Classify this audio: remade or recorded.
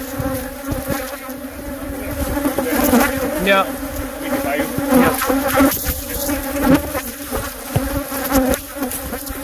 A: recorded